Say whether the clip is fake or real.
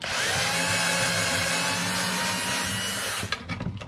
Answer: real